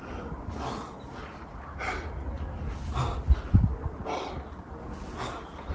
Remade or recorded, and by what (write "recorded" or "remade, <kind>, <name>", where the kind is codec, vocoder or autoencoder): recorded